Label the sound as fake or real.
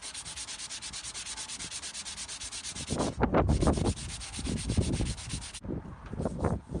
real